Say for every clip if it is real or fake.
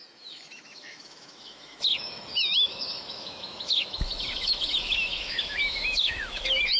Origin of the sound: fake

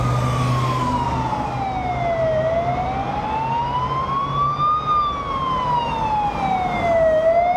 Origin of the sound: real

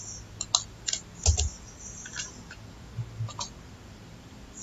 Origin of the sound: real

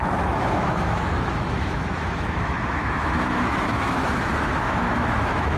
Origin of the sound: fake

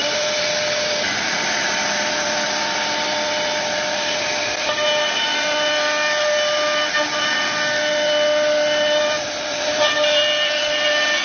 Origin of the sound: real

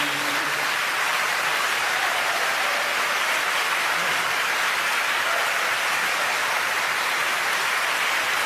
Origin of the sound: real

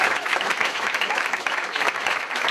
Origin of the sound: fake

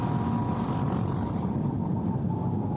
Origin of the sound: real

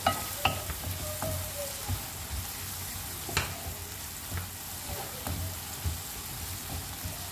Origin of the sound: real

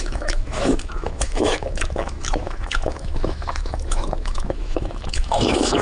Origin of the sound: fake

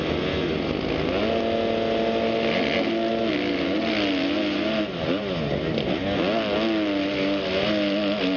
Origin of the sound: real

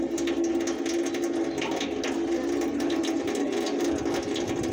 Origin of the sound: real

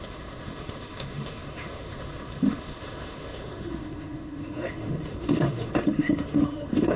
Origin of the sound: fake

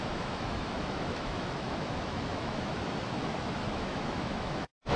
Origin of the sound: fake